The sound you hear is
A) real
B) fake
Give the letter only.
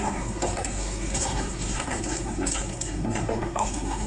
B